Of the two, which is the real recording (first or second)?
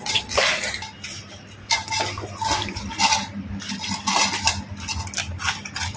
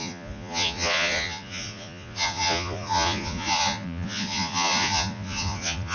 first